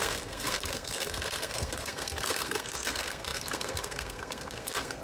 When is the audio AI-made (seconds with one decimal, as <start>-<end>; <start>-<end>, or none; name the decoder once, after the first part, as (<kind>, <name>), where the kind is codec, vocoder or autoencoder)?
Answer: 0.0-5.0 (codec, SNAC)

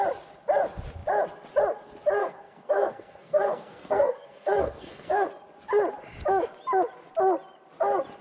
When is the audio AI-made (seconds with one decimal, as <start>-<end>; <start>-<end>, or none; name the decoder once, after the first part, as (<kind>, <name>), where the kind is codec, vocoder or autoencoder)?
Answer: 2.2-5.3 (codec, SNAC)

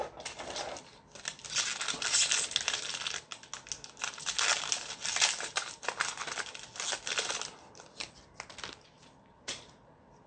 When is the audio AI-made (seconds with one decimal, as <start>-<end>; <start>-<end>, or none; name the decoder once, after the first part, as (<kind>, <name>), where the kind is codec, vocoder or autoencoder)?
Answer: none

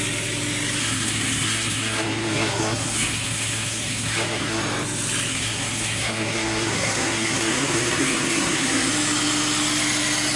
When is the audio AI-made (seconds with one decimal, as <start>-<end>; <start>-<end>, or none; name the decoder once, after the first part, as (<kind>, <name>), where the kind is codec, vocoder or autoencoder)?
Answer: 0.8-4.6 (codec, SNAC); 5.3-8.9

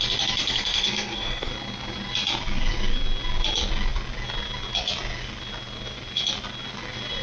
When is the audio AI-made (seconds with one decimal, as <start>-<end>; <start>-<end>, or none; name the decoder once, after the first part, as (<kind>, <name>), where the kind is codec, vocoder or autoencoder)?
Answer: 0.4-1.5 (codec, SNAC)